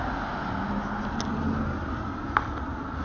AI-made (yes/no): no